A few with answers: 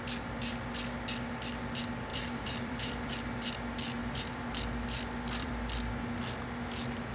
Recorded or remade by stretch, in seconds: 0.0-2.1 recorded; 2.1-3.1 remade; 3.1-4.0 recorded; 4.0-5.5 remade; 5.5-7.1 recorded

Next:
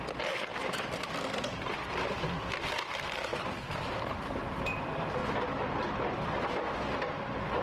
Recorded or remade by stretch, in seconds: 0.0-0.5 recorded; 0.5-1.9 remade; 1.9-3.3 recorded; 3.3-3.9 remade; 3.9-5.2 recorded; 5.2-7.1 remade; 7.1-7.6 recorded

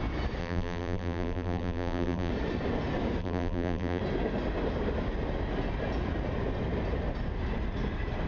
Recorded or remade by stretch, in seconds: 0.0-0.4 recorded; 0.4-2.3 remade; 2.3-3.2 recorded; 3.2-4.0 remade; 4.0-8.3 recorded

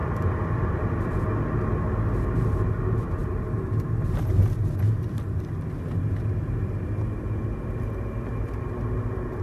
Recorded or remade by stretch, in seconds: 0.0-1.2 remade; 1.2-9.4 recorded

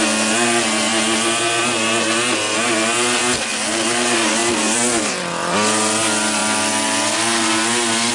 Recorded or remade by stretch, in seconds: 0.0-8.1 recorded

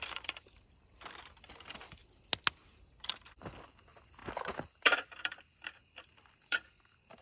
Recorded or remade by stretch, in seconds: 0.0-0.8 remade; 0.8-1.5 recorded; 1.5-2.0 remade; 2.0-2.8 recorded; 2.8-4.2 remade; 4.2-4.8 recorded; 4.8-7.2 remade